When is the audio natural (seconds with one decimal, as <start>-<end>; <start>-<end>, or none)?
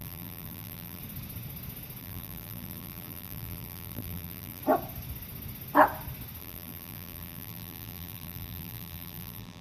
1.0-2.0; 4.6-6.4